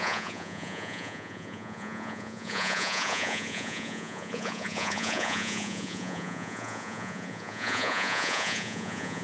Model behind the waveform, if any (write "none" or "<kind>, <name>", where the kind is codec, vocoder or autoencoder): vocoder, Vocos